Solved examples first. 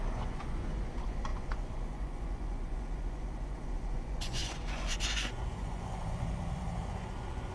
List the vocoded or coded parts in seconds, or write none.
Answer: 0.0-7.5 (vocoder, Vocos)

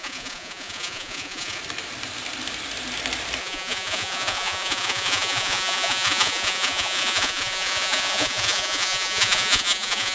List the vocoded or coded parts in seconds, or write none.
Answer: 0.0-1.6 (vocoder, Vocos); 3.4-10.1

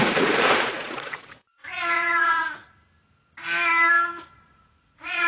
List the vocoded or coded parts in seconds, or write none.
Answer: 0.0-2.6 (vocoder, Vocos); 4.3-5.3

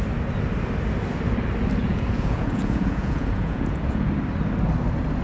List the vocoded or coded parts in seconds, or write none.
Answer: 1.8-4.1 (vocoder, Vocos)

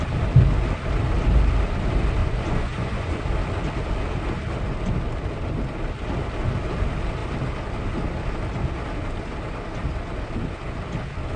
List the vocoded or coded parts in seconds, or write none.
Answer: 2.2-3.2 (vocoder, Vocos)

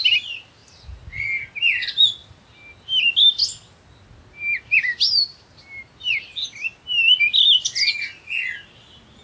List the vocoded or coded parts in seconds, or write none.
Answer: none